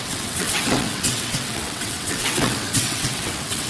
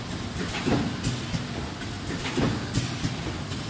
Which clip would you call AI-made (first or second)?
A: first